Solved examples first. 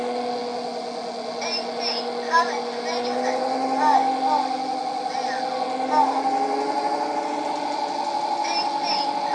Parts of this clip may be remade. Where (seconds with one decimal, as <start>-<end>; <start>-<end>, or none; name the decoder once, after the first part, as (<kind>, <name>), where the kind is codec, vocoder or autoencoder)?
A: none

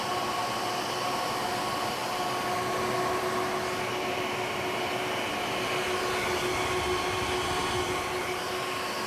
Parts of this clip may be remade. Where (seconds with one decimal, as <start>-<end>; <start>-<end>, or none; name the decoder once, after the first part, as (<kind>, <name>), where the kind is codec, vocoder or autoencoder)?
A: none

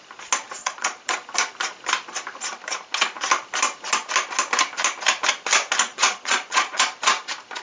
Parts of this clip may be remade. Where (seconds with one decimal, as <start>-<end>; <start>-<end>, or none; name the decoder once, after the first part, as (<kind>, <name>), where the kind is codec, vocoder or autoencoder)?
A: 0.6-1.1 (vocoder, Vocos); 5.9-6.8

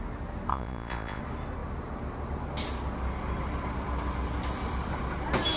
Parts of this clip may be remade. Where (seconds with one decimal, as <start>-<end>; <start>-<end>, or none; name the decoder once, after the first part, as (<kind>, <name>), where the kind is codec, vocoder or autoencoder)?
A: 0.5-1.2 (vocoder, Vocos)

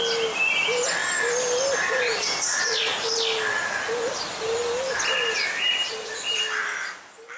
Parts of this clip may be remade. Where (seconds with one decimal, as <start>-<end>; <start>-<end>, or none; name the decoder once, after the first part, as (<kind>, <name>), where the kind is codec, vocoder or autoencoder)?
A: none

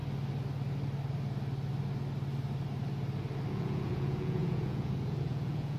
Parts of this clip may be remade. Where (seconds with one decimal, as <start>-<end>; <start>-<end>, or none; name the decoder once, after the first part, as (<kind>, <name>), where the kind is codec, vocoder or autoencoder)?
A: 3.5-5.8 (vocoder, Vocos)

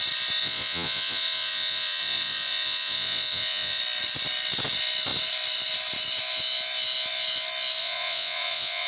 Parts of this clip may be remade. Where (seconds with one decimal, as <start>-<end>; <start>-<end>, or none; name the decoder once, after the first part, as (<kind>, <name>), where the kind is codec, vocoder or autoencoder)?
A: 0.4-3.8 (vocoder, Vocos); 7.8-8.9

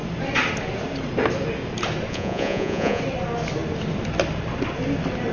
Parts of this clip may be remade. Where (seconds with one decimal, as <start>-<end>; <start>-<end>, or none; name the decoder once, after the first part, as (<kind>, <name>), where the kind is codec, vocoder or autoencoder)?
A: 2.1-3.0 (vocoder, Vocos)